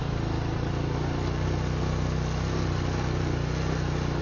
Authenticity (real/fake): real